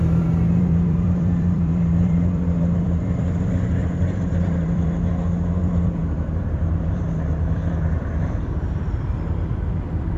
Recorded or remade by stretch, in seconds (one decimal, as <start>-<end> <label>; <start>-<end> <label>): 0.0-5.1 remade; 5.1-5.6 recorded; 5.6-10.2 remade